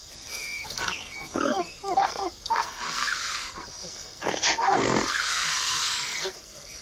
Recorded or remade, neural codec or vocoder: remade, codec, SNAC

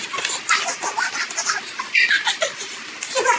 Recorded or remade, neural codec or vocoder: recorded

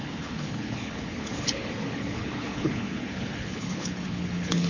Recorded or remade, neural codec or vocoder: remade, codec, HILCodec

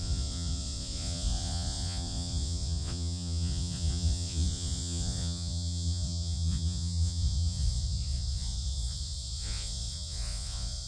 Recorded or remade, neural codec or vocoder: remade, vocoder, Vocos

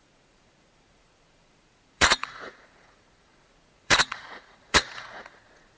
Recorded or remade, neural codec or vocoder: remade, vocoder, Vocos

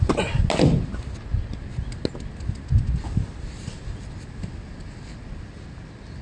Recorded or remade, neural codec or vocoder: recorded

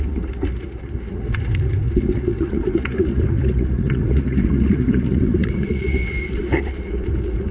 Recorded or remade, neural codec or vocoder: remade, vocoder, Vocos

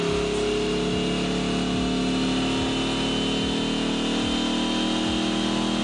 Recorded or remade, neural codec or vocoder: recorded